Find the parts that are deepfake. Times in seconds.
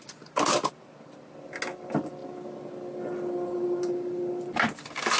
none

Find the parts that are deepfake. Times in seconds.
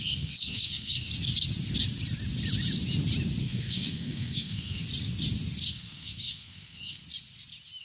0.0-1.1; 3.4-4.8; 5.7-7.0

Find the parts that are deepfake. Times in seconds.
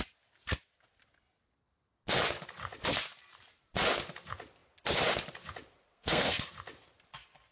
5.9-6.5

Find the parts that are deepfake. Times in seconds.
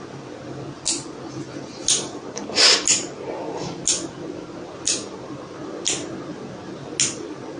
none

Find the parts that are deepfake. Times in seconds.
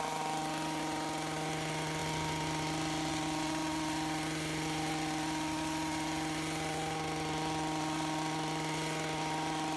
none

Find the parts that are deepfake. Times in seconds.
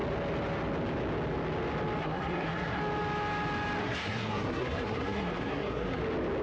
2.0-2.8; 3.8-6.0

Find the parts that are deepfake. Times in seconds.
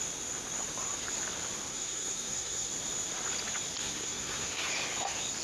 1.7-2.7; 3.8-4.7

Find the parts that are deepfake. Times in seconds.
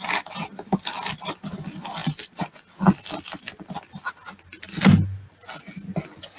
none